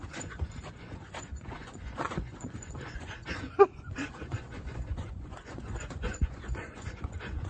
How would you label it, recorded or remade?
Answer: remade